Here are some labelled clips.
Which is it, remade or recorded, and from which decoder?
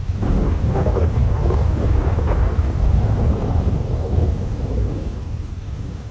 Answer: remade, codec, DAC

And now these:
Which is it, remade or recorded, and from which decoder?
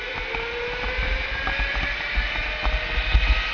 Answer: recorded